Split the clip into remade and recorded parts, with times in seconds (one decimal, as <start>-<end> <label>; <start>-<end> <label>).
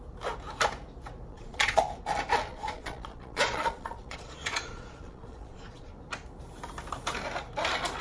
0.0-1.3 recorded; 1.3-1.8 remade; 1.8-2.5 recorded; 2.5-5.9 remade; 5.9-8.0 recorded